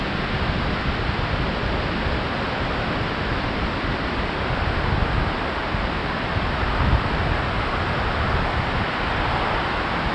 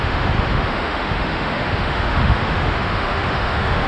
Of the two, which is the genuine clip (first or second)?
first